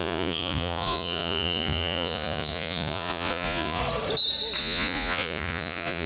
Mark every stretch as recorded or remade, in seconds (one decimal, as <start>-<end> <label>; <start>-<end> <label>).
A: 0.0-3.8 remade; 3.8-4.6 recorded; 4.6-6.1 remade

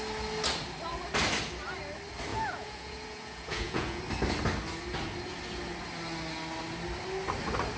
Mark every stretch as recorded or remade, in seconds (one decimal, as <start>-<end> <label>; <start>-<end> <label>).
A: 0.0-2.3 recorded; 2.3-4.0 remade; 4.0-7.8 recorded